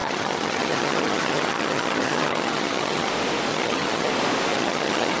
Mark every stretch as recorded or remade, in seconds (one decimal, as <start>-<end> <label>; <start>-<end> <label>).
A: 0.0-3.1 remade; 3.1-3.5 recorded; 3.5-4.1 remade; 4.1-4.5 recorded; 4.5-5.2 remade